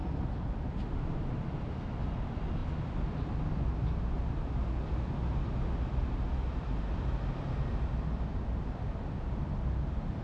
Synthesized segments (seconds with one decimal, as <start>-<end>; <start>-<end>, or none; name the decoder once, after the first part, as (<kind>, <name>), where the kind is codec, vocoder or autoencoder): 0.0-0.5 (vocoder, BigVGAN v2)